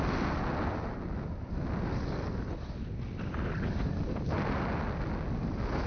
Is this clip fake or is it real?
real